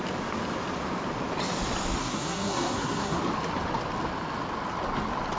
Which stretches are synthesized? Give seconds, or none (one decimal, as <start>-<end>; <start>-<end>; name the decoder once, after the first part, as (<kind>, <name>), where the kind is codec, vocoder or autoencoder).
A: 2.0-3.2 (codec, SNAC)